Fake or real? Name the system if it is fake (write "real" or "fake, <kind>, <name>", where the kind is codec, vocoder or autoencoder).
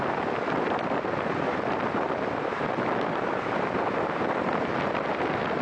real